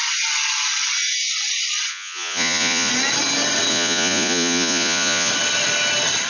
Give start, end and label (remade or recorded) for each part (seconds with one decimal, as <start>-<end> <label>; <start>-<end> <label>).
0.0-1.9 recorded; 1.9-2.9 remade; 2.9-3.7 recorded; 3.7-5.3 remade; 5.3-6.3 recorded